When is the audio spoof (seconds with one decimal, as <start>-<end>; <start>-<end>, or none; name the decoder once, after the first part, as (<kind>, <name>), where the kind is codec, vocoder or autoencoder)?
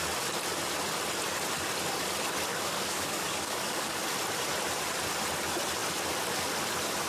2.5-4.0 (codec, DAC)